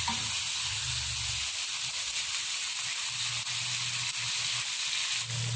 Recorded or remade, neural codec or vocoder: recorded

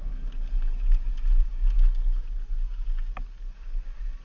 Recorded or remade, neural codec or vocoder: recorded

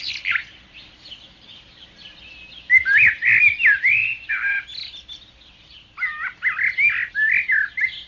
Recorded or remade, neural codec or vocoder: recorded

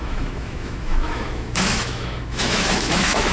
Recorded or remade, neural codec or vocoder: remade, autoencoder, DAC-VAE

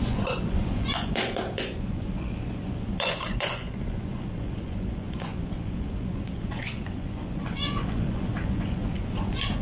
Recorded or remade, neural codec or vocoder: remade, vocoder, Vocos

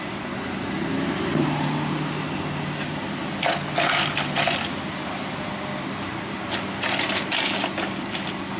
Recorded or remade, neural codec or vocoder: recorded